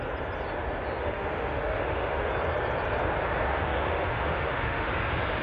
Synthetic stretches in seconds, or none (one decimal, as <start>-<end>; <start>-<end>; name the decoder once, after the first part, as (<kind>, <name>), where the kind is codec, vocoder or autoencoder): 1.0-2.3 (autoencoder, DAC-VAE); 3.5-4.9